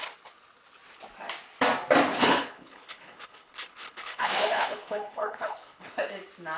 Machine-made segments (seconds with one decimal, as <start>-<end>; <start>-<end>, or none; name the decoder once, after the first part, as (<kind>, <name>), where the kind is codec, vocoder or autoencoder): 2.1-6.1 (codec, HILCodec)